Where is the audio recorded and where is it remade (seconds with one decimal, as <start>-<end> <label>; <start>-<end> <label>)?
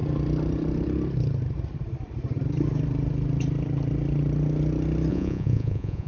0.0-5.1 recorded; 5.1-6.1 remade